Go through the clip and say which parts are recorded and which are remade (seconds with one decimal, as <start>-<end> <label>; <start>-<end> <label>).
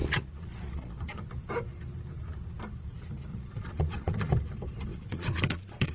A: 0.0-1.2 remade; 1.2-3.3 recorded; 3.3-4.3 remade; 4.3-4.9 recorded; 4.9-5.9 remade